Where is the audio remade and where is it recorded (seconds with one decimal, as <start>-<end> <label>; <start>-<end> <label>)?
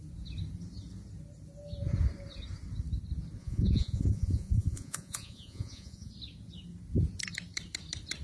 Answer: 0.0-3.4 recorded; 3.4-6.1 remade; 6.1-8.2 recorded